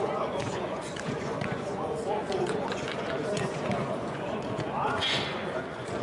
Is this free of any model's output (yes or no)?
no